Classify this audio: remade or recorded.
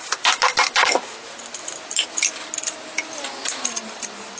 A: recorded